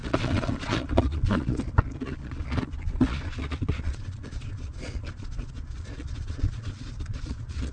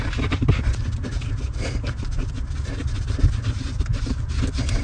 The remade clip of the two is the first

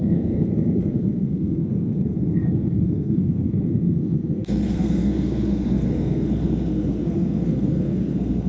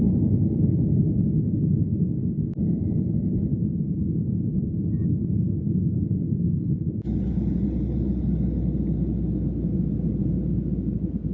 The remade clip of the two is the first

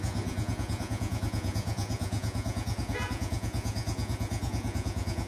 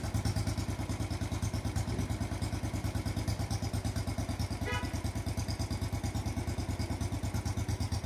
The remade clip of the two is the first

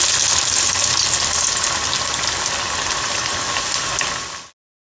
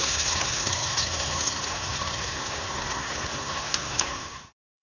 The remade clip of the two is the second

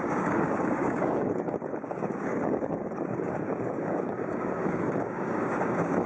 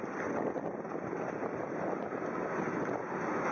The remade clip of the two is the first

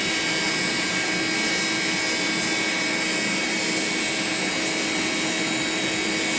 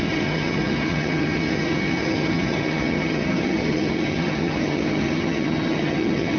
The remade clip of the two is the second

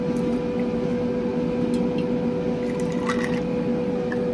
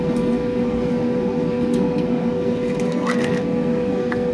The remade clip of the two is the second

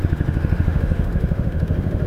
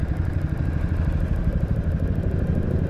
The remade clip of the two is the first